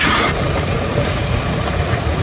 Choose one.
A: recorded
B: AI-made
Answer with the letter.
B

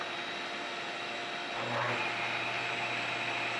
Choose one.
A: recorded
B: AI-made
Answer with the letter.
A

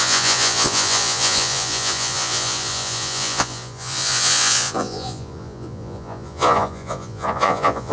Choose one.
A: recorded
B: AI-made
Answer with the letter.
B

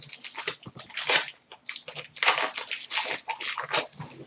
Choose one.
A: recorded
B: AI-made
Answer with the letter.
A